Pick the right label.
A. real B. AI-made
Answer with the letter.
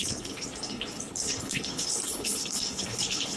B